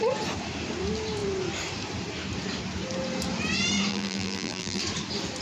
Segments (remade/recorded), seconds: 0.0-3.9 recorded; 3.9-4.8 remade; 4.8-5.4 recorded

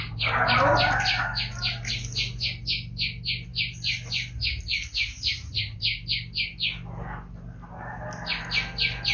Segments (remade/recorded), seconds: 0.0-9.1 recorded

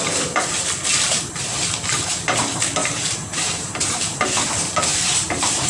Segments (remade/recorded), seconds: 0.0-0.9 recorded; 0.9-1.4 remade; 1.4-2.8 recorded; 2.8-4.5 remade; 4.5-4.9 recorded; 4.9-5.7 remade